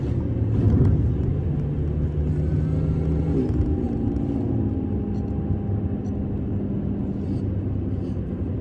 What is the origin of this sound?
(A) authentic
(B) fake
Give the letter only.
A